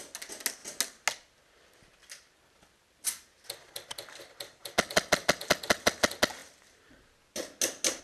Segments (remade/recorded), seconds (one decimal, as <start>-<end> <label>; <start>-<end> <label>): 0.0-8.0 recorded